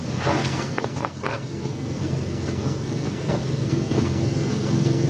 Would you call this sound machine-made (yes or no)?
yes